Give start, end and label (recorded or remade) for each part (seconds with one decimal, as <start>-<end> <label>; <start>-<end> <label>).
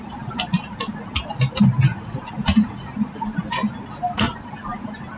0.0-1.9 recorded; 1.9-2.9 remade; 2.9-5.2 recorded